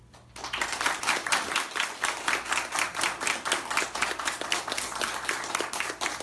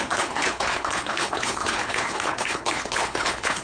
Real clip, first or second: first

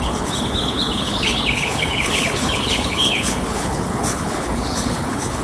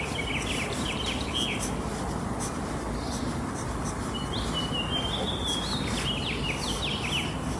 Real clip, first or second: second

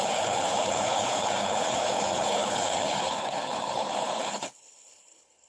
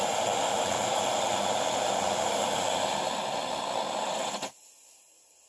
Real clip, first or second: second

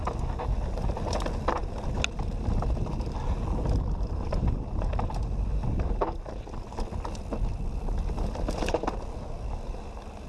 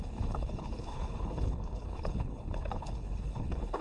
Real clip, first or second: first